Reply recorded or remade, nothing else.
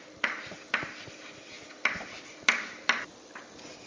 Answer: remade